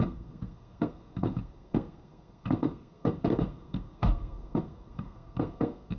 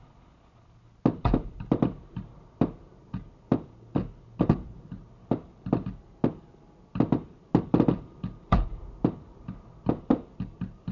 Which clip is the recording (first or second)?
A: second